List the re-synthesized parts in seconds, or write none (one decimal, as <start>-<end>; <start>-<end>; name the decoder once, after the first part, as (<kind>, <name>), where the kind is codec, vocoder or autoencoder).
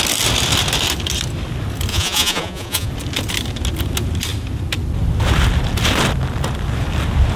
1.9-2.9 (vocoder, Vocos)